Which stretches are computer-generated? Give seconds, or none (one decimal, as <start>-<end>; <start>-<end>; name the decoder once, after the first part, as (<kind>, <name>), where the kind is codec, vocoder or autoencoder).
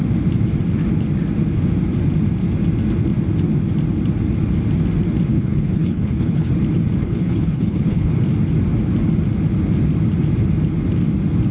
5.3-6.5 (codec, HILCodec); 7.0-8.1